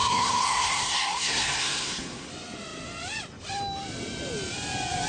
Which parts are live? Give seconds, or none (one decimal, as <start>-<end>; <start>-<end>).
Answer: 2.3-5.1